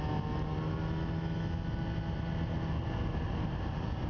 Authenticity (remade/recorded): recorded